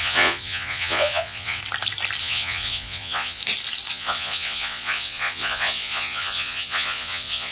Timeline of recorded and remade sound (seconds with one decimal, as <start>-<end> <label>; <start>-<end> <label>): 0.0-1.6 remade; 1.6-2.2 recorded; 2.2-3.4 remade; 3.4-3.9 recorded; 3.9-7.5 remade